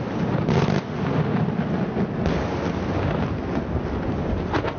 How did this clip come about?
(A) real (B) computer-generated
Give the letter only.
A